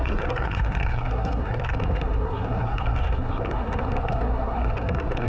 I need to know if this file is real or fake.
fake